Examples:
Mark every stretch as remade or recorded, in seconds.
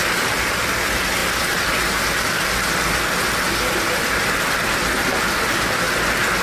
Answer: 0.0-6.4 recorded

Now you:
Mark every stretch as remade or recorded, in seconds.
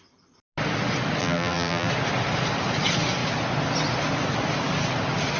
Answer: 0.0-1.2 recorded; 1.2-1.9 remade; 1.9-5.4 recorded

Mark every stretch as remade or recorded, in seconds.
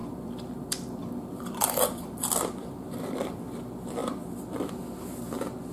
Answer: 0.0-3.4 remade; 3.4-4.0 recorded; 4.0-4.7 remade; 4.7-5.7 recorded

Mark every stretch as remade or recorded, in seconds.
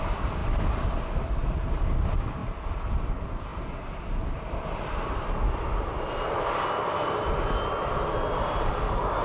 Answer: 0.0-0.4 recorded; 0.4-1.8 remade; 1.8-2.4 recorded; 2.4-3.1 remade; 3.1-9.2 recorded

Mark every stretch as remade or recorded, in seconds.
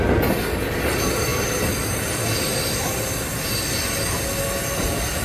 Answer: 0.0-5.2 recorded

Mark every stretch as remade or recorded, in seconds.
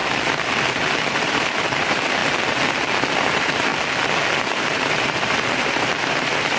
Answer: 0.0-1.1 recorded; 1.1-2.2 remade; 2.2-3.3 recorded; 3.3-3.7 remade; 3.7-4.5 recorded; 4.5-6.6 remade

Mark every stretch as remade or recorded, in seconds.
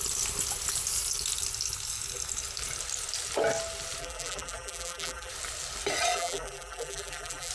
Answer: 0.0-4.0 recorded; 4.0-5.3 remade; 5.3-6.1 recorded; 6.1-7.5 remade